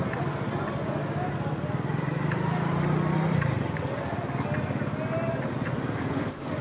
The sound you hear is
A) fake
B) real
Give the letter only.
B